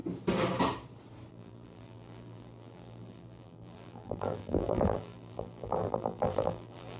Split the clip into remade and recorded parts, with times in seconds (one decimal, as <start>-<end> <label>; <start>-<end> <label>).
0.0-1.3 recorded; 1.3-7.0 remade